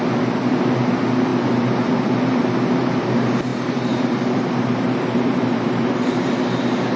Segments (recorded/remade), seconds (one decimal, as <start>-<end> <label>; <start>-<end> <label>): 0.0-3.5 recorded; 3.5-6.3 remade; 6.3-7.0 recorded